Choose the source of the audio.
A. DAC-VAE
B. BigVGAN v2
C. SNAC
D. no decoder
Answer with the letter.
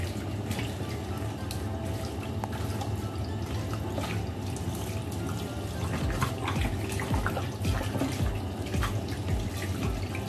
D